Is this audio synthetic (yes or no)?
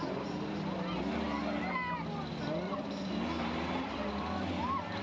no